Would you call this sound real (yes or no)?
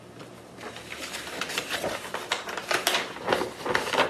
yes